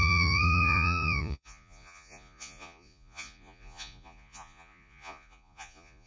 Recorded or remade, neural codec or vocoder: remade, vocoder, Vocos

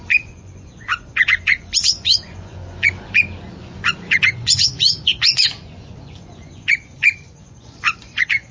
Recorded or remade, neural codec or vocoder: remade, vocoder, Vocos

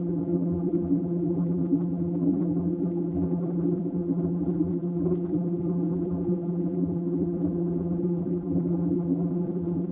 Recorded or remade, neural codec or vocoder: remade, vocoder, BigVGAN v2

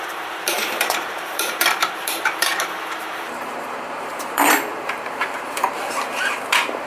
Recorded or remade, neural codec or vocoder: remade, vocoder, BigVGAN v2